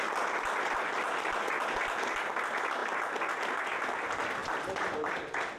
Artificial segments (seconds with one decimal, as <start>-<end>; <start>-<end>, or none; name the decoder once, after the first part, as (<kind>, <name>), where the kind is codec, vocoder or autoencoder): none